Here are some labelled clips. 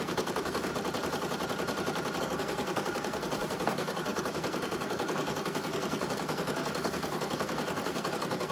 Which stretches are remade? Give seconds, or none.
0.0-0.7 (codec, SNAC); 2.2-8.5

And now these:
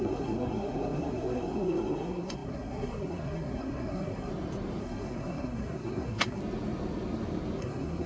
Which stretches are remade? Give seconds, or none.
0.0-4.3 (codec, SNAC); 4.8-6.4; 7.6-8.1

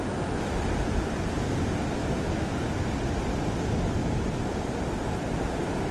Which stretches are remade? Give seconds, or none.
2.0-2.7 (autoencoder, DAC-VAE)

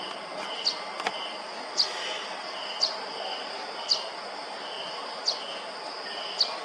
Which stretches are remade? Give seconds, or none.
none

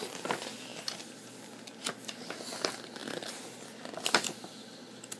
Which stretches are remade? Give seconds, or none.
none

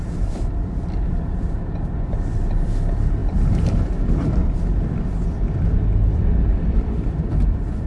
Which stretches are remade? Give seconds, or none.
0.0-7.9 (vocoder, BigVGAN v2)

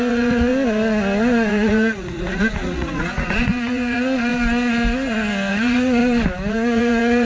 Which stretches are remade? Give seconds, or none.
0.0-0.5 (vocoder, Vocos); 1.5-4.3; 5.5-6.0; 6.5-7.2